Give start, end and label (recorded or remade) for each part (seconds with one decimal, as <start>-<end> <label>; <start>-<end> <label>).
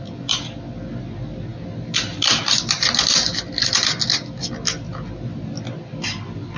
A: 0.0-6.6 recorded